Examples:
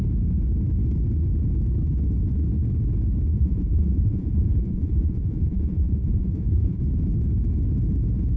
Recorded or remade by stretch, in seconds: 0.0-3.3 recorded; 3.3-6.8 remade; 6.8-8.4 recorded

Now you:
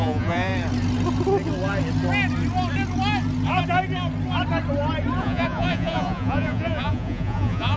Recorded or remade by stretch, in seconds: 0.0-0.5 remade; 0.5-5.2 recorded; 5.2-7.8 remade

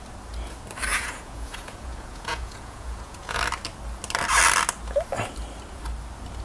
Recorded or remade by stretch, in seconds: 0.0-0.9 recorded; 0.9-3.4 remade; 3.4-6.4 recorded

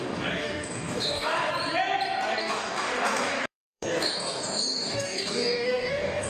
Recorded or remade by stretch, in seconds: 0.0-1.5 remade; 1.5-2.4 recorded; 2.4-6.3 remade

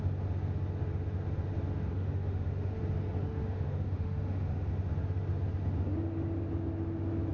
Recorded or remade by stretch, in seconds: 0.0-1.9 recorded; 1.9-2.8 remade; 2.8-3.2 recorded; 3.2-4.7 remade; 4.7-7.3 recorded

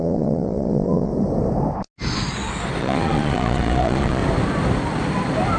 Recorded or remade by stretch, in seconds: 0.0-1.1 remade; 1.1-2.8 recorded; 2.8-4.2 remade; 4.2-5.6 recorded

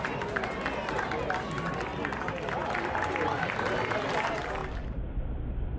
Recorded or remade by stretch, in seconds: 0.0-5.8 recorded